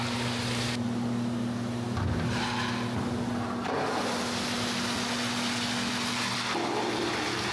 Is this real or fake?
real